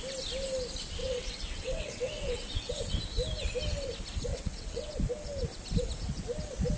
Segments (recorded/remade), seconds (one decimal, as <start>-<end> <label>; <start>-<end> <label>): 0.0-1.0 recorded; 1.0-3.0 remade; 3.0-4.3 recorded; 4.3-4.9 remade; 4.9-6.8 recorded